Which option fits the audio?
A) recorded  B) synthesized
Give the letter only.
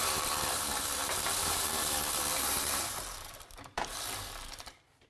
B